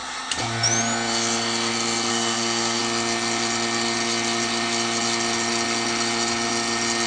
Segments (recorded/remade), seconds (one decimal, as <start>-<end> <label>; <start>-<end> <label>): 0.0-2.1 recorded; 2.1-2.8 remade; 2.8-7.1 recorded